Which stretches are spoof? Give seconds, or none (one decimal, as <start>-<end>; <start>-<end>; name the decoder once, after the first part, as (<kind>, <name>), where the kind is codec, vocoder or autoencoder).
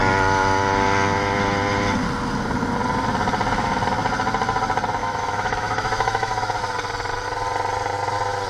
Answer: 5.0-6.6 (autoencoder, DAC-VAE)